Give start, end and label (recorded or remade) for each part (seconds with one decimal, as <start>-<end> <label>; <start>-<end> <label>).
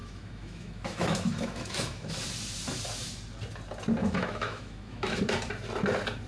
0.0-2.2 remade; 2.2-4.0 recorded; 4.0-5.2 remade; 5.2-6.3 recorded